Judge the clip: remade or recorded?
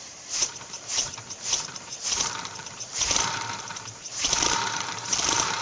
remade